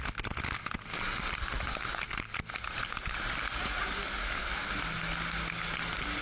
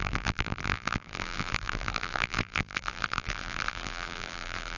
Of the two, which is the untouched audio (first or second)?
first